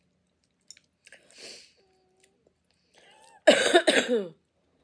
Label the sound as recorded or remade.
recorded